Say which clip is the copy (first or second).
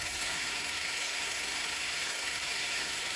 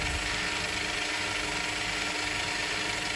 first